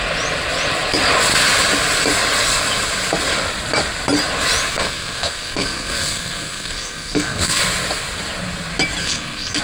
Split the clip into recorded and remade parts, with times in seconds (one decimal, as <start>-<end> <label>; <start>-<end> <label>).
0.0-4.7 recorded; 4.7-7.6 remade; 7.6-9.0 recorded; 9.0-9.6 remade